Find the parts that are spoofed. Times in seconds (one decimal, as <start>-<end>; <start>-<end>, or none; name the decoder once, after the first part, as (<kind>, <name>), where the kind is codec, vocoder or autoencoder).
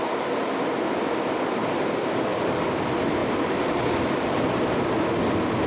3.2-4.9 (vocoder, BigVGAN v2)